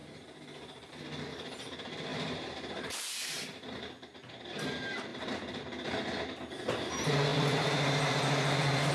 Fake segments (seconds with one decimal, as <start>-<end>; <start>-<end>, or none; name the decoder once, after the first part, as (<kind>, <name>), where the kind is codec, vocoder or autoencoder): 2.1-3.0 (vocoder, BigVGAN v2); 5.1-5.6; 7.3-8.9